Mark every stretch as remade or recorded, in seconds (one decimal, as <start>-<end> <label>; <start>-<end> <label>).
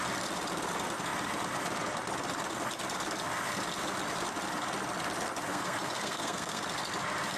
0.0-5.5 recorded; 5.5-6.6 remade; 6.6-7.4 recorded